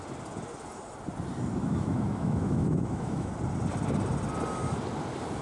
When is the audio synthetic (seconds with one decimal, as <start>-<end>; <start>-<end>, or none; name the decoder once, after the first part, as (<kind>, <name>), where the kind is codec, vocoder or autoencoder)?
1.6-3.3 (autoencoder, DAC-VAE)